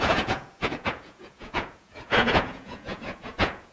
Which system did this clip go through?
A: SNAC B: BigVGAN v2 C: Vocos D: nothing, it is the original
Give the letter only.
C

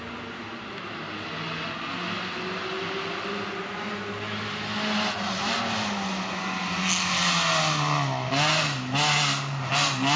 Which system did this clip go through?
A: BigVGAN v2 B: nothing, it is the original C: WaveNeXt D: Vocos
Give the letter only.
B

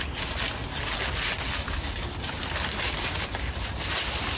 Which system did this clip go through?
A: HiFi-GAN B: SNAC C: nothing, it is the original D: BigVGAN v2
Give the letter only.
C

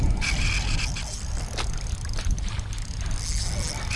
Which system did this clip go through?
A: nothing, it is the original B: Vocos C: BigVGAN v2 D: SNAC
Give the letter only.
A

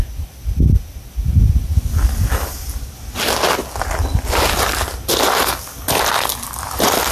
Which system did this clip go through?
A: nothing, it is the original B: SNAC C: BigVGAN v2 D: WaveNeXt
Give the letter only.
A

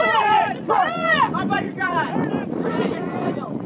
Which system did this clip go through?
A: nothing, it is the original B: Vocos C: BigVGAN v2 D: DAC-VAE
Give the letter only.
B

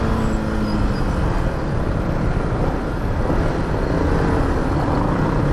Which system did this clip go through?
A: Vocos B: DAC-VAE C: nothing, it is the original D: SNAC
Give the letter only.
C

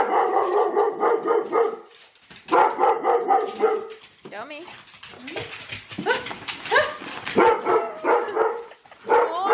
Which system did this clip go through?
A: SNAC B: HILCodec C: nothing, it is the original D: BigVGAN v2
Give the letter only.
C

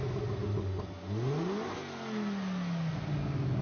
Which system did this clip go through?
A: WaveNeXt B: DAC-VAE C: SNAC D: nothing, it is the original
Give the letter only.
D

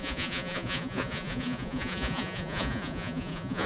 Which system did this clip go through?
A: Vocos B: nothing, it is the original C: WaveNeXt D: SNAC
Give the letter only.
A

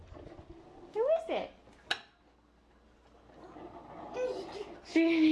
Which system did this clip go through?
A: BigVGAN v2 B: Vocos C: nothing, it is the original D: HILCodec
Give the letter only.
C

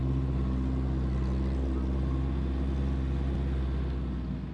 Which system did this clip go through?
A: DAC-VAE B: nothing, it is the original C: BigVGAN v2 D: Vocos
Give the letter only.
B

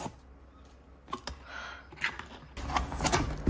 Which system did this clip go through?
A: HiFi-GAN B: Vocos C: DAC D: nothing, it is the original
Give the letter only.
D